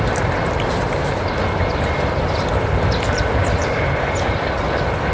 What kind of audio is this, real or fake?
real